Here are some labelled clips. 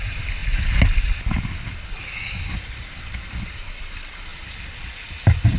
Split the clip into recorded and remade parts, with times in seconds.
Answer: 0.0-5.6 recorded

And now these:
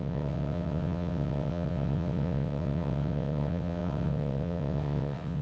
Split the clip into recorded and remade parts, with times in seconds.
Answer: 0.0-5.4 remade